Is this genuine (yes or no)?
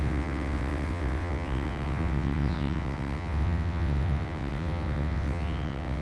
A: no